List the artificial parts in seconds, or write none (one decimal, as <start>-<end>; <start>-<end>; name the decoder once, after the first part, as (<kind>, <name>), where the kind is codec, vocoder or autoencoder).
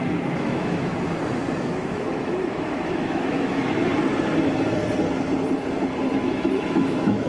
0.0-0.9 (autoencoder, DAC-VAE); 1.6-3.8; 6.2-7.3